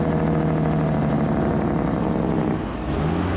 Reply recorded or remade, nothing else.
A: recorded